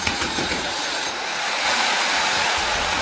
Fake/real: fake